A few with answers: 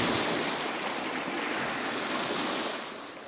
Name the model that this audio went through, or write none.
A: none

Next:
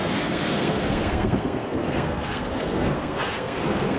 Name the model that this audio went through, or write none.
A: codec, SNAC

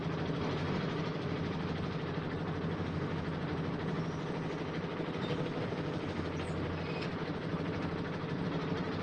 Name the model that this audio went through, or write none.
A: none